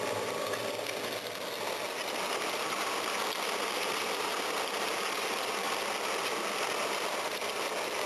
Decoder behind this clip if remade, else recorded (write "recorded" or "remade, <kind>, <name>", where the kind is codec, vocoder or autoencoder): recorded